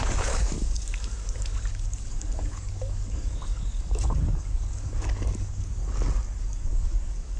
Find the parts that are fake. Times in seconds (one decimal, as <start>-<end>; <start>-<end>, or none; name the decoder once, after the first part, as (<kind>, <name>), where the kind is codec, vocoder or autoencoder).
0.0-5.8 (codec, DAC); 6.4-7.4